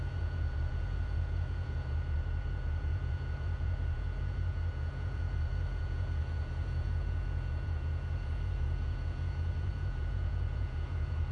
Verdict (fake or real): fake